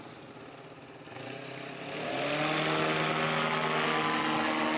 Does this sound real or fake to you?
real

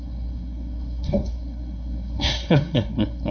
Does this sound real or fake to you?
fake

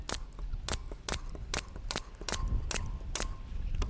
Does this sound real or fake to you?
real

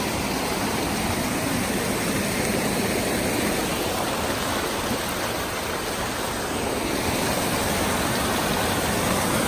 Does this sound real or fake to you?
real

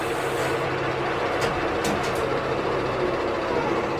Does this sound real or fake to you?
real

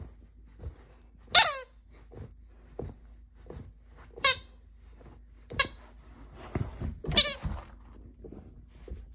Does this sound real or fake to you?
real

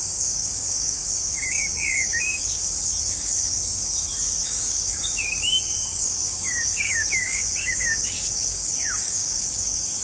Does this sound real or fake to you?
fake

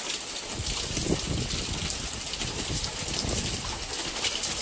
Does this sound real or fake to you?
fake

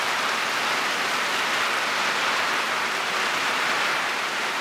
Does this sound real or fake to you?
fake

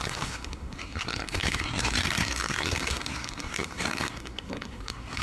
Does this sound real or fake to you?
fake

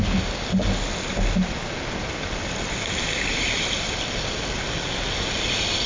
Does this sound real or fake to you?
real